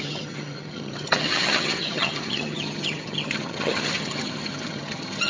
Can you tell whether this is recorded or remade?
remade